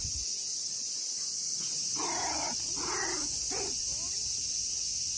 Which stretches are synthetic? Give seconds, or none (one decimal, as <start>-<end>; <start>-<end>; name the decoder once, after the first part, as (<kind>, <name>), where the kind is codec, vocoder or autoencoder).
0.8-1.3 (vocoder, Vocos); 2.0-3.8